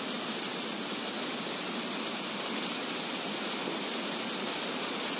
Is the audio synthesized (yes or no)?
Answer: no